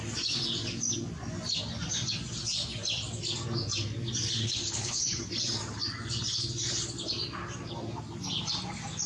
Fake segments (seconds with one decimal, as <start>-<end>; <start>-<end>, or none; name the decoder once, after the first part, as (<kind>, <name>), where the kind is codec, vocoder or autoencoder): 4.4-5.2 (codec, HILCodec)